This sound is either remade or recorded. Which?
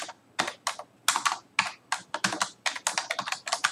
recorded